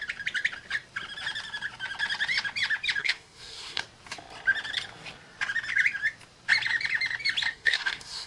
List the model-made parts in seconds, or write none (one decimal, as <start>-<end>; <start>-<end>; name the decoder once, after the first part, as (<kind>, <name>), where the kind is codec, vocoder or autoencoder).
3.0-3.8 (codec, SNAC); 7.5-8.3